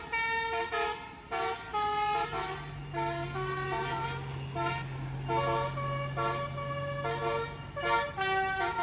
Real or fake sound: real